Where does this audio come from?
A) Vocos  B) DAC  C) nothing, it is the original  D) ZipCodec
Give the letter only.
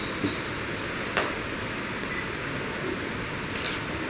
C